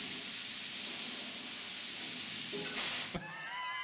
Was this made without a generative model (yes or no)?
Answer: yes